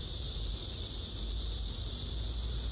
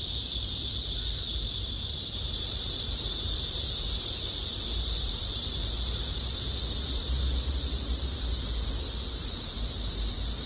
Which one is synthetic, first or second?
second